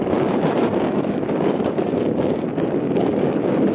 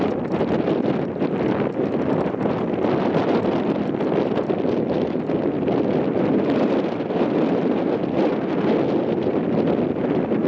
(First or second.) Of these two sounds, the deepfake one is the first